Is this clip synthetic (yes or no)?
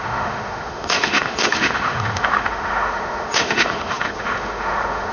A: yes